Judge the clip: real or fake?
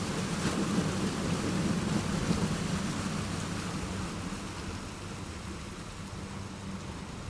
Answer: real